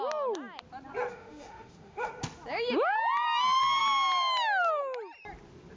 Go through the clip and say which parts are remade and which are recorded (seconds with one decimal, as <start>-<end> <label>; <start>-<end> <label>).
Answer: 0.0-1.1 recorded; 1.1-2.1 remade; 2.1-5.8 recorded